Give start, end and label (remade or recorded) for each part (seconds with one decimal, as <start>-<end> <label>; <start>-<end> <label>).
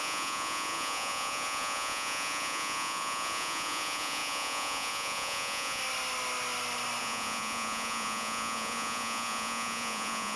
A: 0.0-5.8 remade; 5.8-7.0 recorded; 7.0-10.4 remade